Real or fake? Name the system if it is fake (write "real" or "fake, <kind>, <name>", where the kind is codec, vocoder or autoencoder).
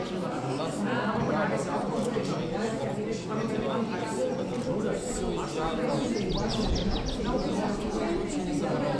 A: real